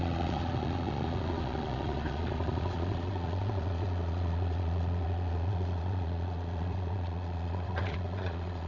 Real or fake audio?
fake